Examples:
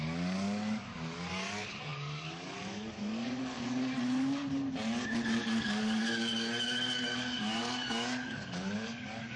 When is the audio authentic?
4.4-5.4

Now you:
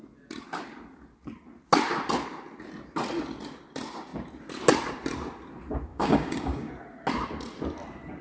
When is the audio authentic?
0.0-5.9; 6.7-8.2